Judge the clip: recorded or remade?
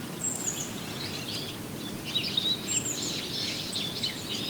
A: recorded